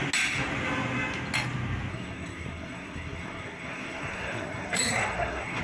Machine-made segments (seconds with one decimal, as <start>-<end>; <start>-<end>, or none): 1.9-5.6